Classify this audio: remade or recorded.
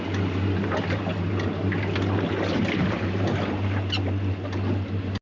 recorded